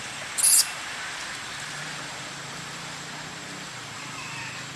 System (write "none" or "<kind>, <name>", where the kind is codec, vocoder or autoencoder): none